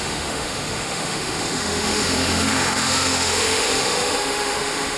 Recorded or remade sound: remade